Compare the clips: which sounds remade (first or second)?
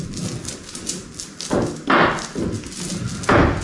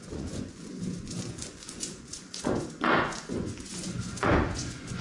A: second